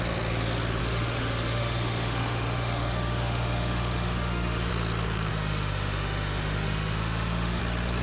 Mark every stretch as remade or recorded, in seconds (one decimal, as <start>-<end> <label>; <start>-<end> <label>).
0.0-0.8 recorded; 0.8-4.7 remade; 4.7-5.3 recorded; 5.3-7.6 remade; 7.6-8.0 recorded

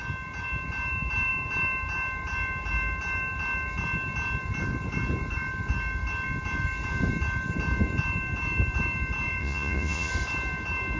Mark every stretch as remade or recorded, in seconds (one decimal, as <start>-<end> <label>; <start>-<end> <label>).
0.0-9.4 recorded; 9.4-10.1 remade; 10.1-11.0 recorded